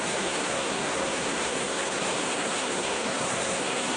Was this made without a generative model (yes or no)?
no